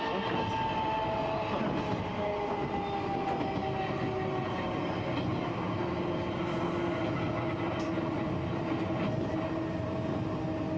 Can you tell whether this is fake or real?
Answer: real